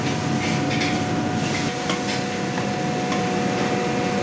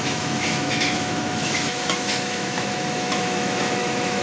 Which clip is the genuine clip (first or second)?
first